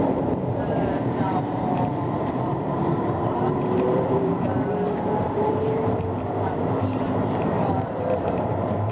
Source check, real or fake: fake